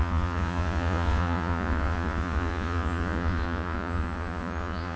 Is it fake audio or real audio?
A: fake